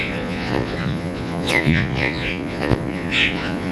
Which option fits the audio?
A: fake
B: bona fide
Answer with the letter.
A